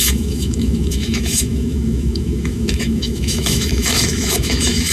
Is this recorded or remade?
remade